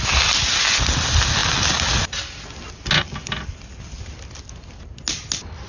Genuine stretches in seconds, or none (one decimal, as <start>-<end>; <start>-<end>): 0.0-5.7